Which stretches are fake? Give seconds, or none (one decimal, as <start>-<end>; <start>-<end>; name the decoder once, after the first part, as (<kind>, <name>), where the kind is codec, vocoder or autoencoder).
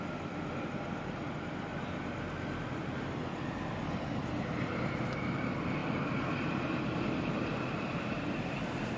none